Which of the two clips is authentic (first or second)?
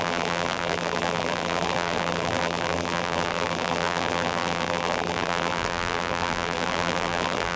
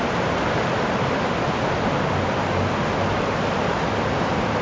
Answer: second